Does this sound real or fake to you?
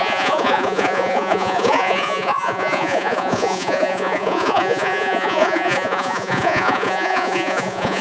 fake